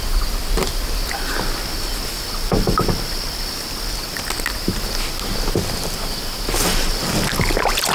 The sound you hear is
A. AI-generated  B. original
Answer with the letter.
B